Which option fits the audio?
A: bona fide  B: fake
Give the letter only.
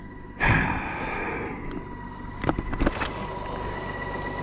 A